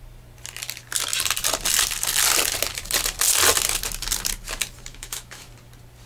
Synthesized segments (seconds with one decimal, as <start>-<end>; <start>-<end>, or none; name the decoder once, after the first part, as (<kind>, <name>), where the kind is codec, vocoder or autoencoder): 4.9-5.5 (autoencoder, DAC-VAE)